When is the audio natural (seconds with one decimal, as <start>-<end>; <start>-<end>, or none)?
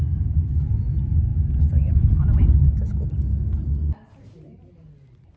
0.0-5.4